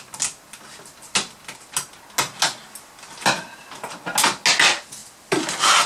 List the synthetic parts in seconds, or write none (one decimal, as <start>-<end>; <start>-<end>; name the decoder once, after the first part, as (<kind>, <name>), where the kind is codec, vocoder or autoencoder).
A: none